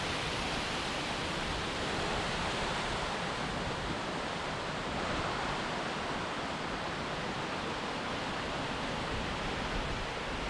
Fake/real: fake